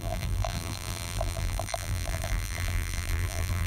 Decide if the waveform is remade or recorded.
remade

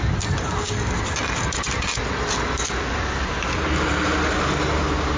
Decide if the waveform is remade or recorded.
recorded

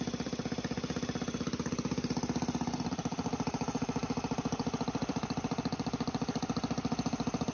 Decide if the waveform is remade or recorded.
remade